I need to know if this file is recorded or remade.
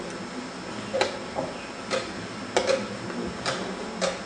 recorded